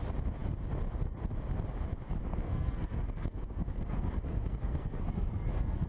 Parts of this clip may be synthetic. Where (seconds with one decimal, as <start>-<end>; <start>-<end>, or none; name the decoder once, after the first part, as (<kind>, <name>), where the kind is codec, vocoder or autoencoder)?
2.2-5.9 (codec, SNAC)